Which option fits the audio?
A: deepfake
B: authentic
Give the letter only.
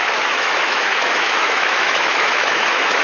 A